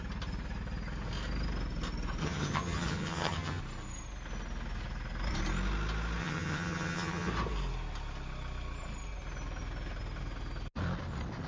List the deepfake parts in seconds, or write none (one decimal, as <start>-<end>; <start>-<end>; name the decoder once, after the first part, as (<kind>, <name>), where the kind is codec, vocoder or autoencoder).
2.2-3.6 (vocoder, HiFi-GAN); 6.2-7.3